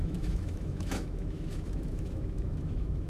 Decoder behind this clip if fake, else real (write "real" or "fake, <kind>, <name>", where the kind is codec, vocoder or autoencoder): fake, autoencoder, DAC-VAE